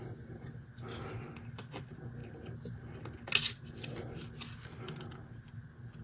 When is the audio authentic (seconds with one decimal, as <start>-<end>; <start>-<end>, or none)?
0.0-6.0